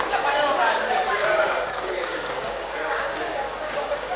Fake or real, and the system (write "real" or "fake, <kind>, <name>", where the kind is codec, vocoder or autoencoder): fake, codec, DAC